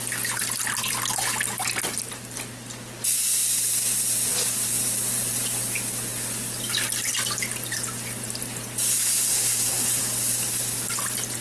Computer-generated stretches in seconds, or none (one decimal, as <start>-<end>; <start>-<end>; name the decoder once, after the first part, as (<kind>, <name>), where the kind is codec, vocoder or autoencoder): 9.3-10.0 (codec, SNAC)